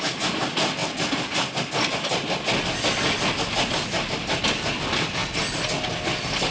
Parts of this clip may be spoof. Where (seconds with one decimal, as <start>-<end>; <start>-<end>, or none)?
none